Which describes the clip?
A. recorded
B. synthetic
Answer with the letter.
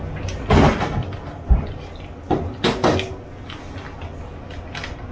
A